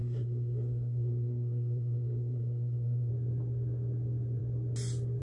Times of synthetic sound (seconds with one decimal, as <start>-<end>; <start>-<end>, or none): 0.0-3.1